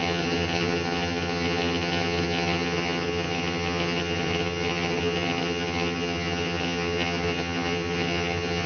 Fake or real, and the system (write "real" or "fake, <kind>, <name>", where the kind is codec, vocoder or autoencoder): fake, vocoder, HiFi-GAN